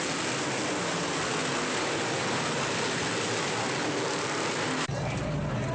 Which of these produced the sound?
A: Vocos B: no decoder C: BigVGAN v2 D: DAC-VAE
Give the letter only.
B